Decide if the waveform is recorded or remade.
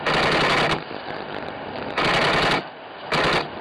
recorded